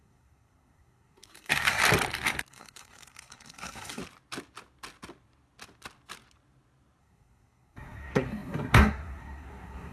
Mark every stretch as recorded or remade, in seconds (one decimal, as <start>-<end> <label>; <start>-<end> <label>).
0.0-1.8 remade; 1.8-2.5 recorded; 2.5-4.0 remade; 4.0-7.0 recorded; 7.0-9.9 remade